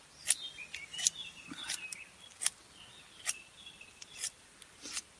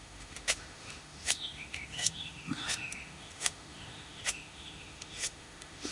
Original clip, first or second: first